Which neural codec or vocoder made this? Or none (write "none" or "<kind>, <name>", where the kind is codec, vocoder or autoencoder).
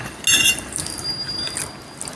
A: none